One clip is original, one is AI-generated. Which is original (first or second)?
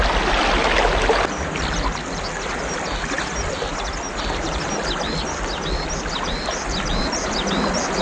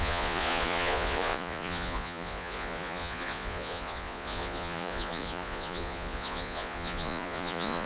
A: first